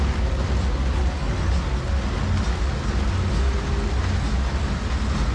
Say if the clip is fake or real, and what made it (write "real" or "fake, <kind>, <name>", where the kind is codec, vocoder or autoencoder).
real